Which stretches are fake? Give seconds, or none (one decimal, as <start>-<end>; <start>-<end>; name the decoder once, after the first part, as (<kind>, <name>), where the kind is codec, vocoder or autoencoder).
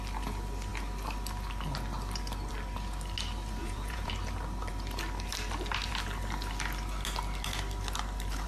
3.6-4.1 (vocoder, Vocos)